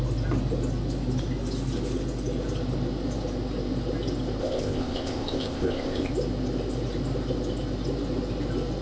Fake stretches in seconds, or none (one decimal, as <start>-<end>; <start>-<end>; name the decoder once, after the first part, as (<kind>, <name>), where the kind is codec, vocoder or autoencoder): 4.4-6.1 (codec, ZipCodec)